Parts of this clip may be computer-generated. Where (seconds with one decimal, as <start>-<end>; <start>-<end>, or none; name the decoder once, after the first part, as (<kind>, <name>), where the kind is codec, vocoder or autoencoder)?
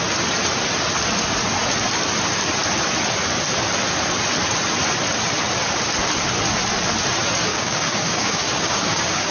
7.5-9.3 (codec, DAC)